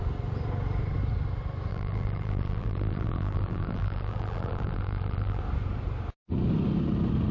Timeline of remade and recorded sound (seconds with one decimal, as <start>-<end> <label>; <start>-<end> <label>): 0.0-1.7 recorded; 1.7-5.4 remade; 5.4-7.3 recorded